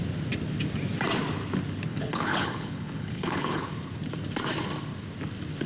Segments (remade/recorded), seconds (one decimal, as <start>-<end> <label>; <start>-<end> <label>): 0.0-1.9 recorded; 1.9-3.7 remade; 3.7-5.7 recorded